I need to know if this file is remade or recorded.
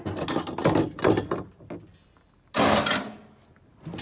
recorded